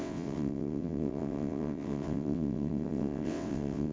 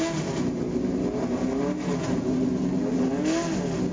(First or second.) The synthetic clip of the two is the first